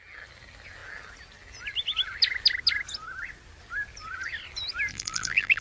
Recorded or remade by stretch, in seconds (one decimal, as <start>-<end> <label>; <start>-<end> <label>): 0.0-4.9 recorded; 4.9-5.6 remade